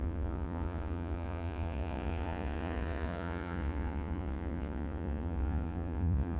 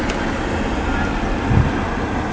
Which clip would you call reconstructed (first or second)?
first